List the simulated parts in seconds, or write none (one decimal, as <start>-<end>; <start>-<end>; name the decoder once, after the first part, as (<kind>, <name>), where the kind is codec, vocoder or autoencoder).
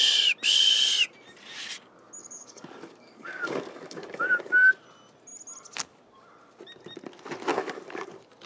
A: 2.2-4.7 (codec, DAC); 7.5-8.1